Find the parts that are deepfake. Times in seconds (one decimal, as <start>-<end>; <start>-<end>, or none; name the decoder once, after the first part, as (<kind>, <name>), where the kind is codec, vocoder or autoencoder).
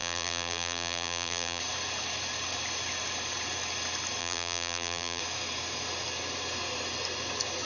0.0-1.6 (vocoder, BigVGAN v2); 4.2-5.2